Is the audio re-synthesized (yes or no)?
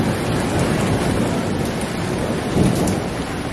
no